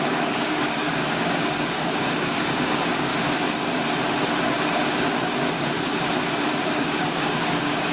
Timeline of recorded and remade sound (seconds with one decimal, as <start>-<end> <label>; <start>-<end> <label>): 0.0-3.1 remade; 3.1-5.5 recorded; 5.5-5.9 remade; 5.9-6.6 recorded; 6.6-7.9 remade